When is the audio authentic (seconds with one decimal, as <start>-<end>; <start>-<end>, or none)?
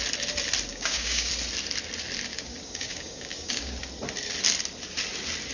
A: 0.0-0.7; 1.3-2.3; 3.8-5.5